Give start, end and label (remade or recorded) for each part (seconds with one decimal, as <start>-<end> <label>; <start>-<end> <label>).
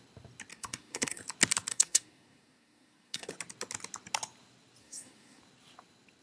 0.0-0.5 recorded; 0.5-1.2 remade; 1.2-1.7 recorded; 1.7-3.3 remade; 3.3-4.8 recorded; 4.8-5.4 remade; 5.4-6.2 recorded